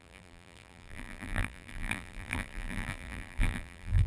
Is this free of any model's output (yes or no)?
no